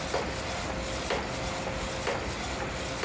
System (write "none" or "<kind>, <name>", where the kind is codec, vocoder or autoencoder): none